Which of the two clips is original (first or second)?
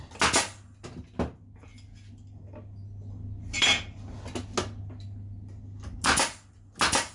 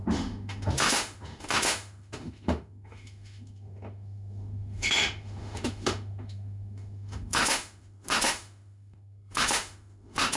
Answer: first